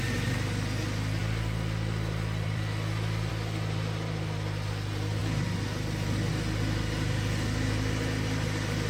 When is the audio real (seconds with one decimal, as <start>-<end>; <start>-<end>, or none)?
0.0-1.2; 3.3-8.9